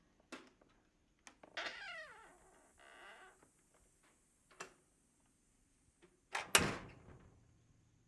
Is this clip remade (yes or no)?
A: no